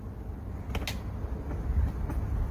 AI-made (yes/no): no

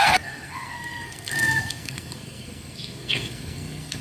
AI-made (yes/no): yes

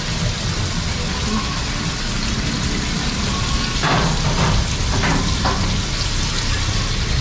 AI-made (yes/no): no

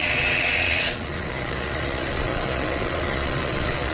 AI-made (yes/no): yes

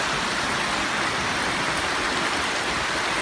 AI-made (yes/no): no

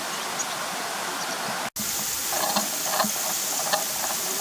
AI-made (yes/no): no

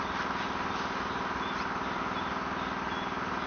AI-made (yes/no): no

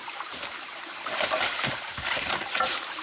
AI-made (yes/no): yes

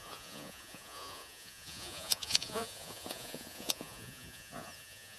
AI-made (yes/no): yes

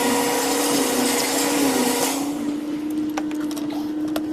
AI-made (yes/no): no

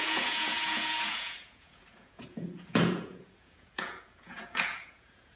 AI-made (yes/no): yes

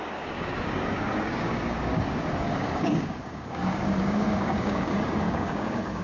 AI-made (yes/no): yes